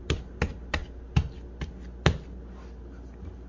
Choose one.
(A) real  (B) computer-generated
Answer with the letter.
A